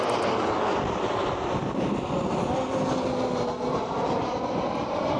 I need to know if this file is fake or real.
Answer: real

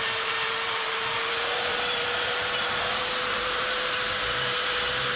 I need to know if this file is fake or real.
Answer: fake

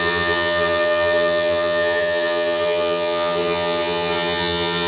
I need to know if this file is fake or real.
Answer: fake